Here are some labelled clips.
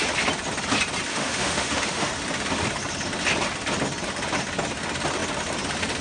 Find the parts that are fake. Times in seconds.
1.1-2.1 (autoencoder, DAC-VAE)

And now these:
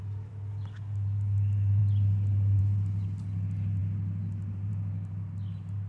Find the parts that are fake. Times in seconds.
none

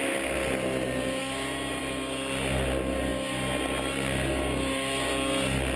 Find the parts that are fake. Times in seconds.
none

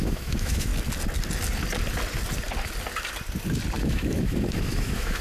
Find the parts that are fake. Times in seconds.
0.0-0.7 (autoencoder, DAC-VAE); 3.8-5.2